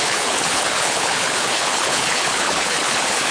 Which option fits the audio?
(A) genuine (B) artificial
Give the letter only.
B